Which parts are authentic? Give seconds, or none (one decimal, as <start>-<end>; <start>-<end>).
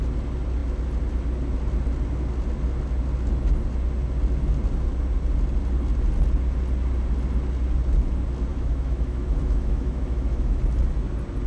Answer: 0.0-8.5; 10.6-11.5